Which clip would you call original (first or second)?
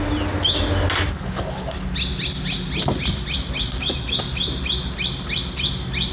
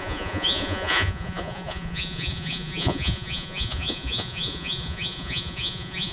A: first